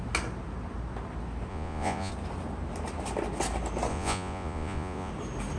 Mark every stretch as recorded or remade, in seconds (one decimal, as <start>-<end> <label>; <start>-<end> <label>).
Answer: 0.0-1.5 recorded; 1.5-2.1 remade; 2.1-3.9 recorded; 3.9-5.1 remade; 5.1-5.6 recorded